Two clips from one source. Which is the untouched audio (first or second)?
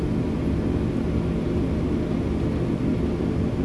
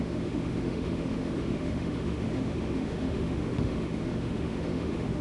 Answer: first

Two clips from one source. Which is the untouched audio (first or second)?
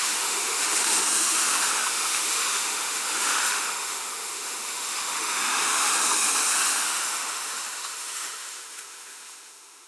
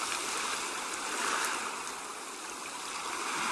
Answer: second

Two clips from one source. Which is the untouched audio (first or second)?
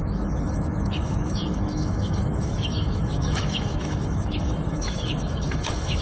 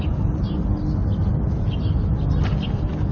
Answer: second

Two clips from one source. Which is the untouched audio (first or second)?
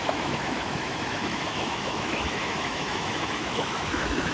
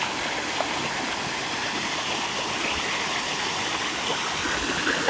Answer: second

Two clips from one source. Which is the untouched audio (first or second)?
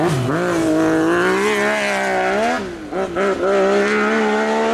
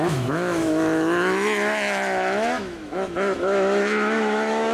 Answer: first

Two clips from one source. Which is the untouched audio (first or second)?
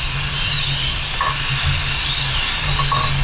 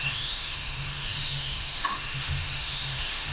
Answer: first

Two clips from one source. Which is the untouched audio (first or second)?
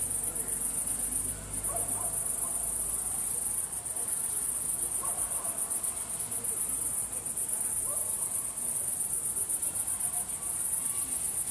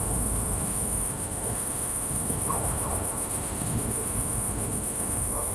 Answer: first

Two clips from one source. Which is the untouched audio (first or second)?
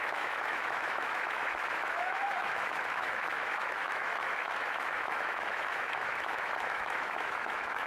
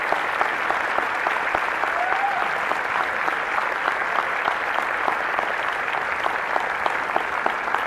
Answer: second